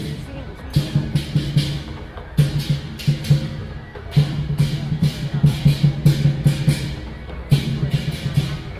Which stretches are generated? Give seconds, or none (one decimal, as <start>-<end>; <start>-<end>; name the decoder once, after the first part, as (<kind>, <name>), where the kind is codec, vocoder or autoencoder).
0.0-0.6 (vocoder, BigVGAN v2); 3.6-5.8